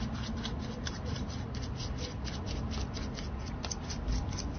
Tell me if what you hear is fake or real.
real